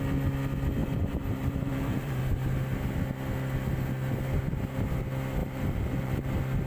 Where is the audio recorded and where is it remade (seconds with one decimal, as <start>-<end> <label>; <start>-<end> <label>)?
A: 0.0-0.8 recorded; 0.8-2.2 remade; 2.2-5.4 recorded; 5.4-6.2 remade; 6.2-6.7 recorded